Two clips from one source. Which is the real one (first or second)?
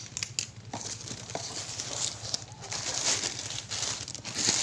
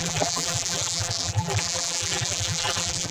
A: first